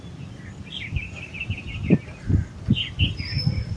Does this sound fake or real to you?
real